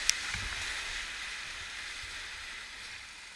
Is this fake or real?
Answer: real